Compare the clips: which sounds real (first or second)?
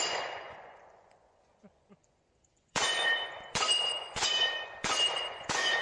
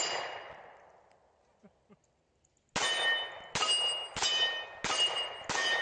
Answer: second